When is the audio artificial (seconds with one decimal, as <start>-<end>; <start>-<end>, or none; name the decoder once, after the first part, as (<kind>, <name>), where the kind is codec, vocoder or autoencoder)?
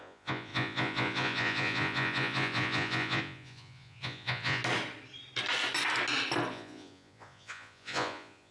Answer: 0.0-4.6 (vocoder, Vocos); 6.5-8.5